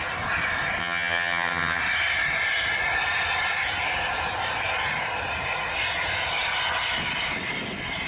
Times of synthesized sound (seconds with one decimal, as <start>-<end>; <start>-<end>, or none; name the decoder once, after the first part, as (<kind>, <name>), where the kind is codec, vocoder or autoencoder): 0.8-1.8 (vocoder, HiFi-GAN)